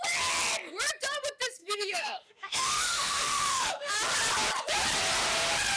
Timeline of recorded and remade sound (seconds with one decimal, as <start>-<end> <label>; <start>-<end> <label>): 0.0-1.6 recorded; 1.6-3.9 remade; 3.9-5.8 recorded